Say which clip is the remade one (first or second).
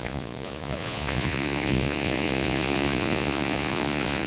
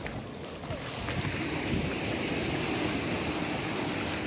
first